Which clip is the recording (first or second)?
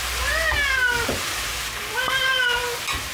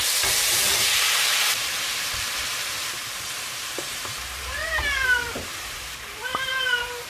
first